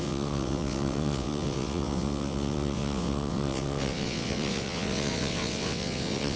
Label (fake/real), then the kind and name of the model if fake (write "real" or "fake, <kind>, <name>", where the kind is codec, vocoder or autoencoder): fake, vocoder, WaveNeXt